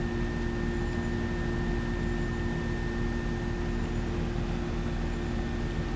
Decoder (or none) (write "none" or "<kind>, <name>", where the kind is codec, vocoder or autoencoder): none